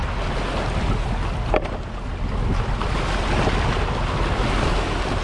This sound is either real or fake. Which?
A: real